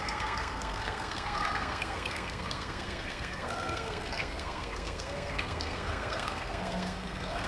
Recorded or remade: remade